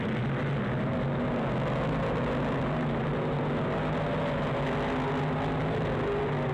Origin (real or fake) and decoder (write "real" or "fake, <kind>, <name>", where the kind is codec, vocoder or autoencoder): real